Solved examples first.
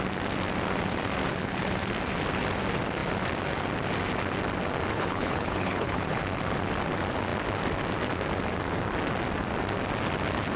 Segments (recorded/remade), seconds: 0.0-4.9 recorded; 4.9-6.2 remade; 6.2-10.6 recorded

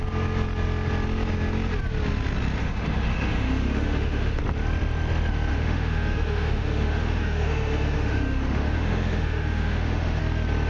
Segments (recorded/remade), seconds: 0.0-2.6 recorded; 2.6-4.4 remade; 4.4-5.5 recorded; 5.5-10.2 remade; 10.2-10.7 recorded

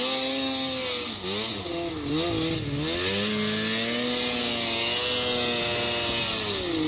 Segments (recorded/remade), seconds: 0.0-6.9 recorded

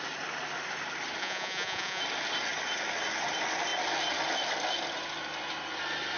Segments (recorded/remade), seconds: 0.0-1.2 recorded; 1.2-2.0 remade; 2.0-6.2 recorded

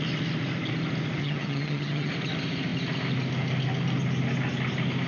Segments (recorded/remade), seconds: 0.0-1.2 recorded; 1.2-2.1 remade; 2.1-5.1 recorded

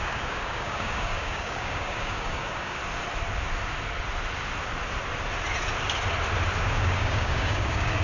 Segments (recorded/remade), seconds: 0.0-2.8 remade; 2.8-6.6 recorded; 6.6-8.0 remade

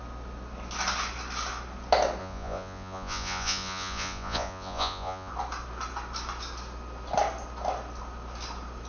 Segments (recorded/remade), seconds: 0.0-2.2 recorded; 2.2-5.3 remade; 5.3-8.9 recorded